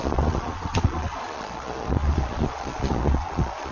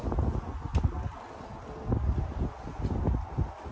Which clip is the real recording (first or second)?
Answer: second